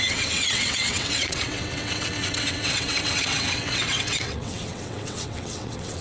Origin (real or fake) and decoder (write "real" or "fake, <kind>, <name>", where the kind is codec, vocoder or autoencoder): fake, vocoder, WaveNeXt